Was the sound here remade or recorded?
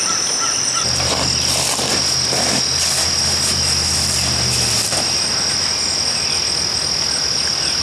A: recorded